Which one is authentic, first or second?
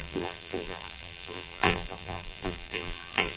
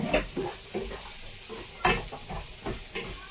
second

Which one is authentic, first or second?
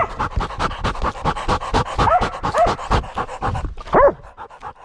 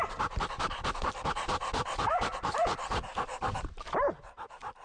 first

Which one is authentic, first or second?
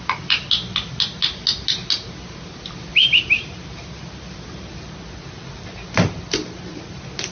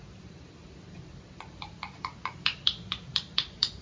first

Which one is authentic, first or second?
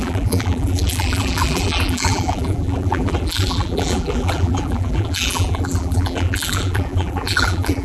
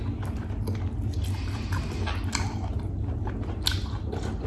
second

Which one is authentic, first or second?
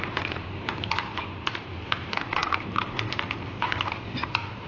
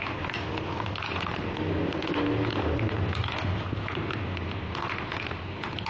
second